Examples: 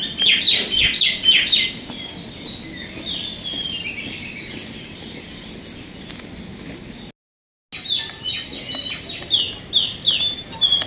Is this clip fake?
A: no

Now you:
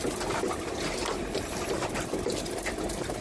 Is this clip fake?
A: yes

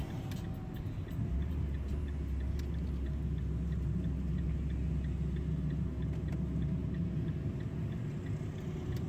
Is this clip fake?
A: no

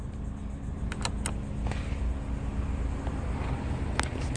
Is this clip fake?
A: no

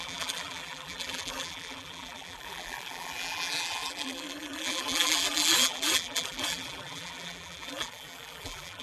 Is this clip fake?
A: yes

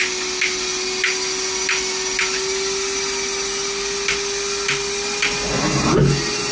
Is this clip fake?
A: no